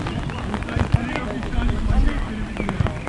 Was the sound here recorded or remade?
recorded